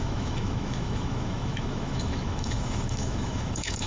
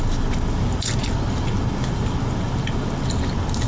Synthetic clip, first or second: first